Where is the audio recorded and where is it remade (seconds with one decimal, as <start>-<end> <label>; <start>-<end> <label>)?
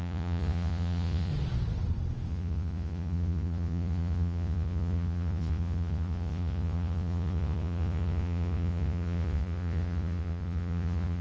0.0-1.3 remade; 1.3-2.3 recorded; 2.3-11.2 remade